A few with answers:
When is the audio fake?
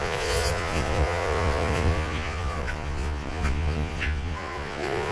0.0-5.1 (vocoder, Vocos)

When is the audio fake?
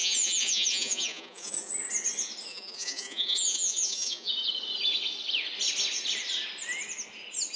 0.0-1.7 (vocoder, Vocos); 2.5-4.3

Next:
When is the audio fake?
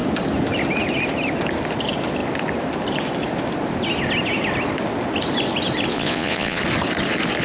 5.9-6.6 (vocoder, Vocos)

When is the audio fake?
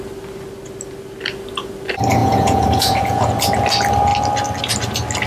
2.2-3.3 (vocoder, Vocos)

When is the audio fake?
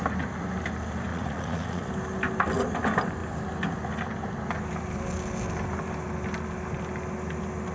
1.1-1.9 (vocoder, Vocos)